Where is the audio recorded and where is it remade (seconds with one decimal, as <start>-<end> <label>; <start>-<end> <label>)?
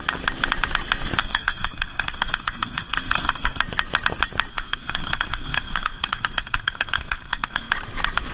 0.0-1.2 recorded; 1.2-3.6 remade; 3.6-4.5 recorded; 4.5-7.7 remade; 7.7-8.3 recorded